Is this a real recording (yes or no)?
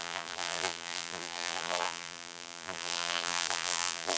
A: no